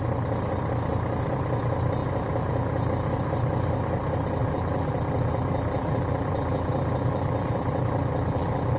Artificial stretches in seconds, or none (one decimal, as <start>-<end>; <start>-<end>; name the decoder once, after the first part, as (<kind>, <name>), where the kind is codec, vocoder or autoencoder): 4.4-8.8 (vocoder, BigVGAN v2)